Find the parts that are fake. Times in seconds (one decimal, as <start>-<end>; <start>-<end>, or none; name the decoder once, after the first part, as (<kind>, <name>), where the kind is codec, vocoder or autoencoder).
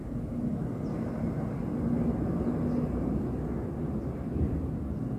none